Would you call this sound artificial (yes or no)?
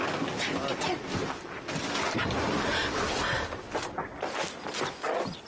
no